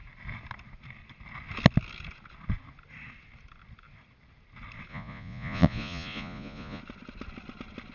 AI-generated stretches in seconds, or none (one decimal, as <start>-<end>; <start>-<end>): 4.9-6.8